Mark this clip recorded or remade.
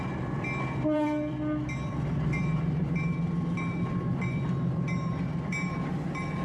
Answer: remade